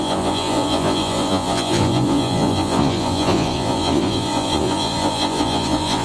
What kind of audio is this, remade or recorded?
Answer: remade